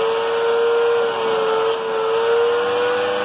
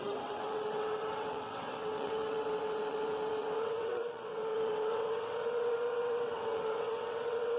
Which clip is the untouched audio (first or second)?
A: first